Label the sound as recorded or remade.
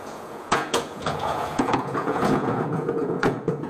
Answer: remade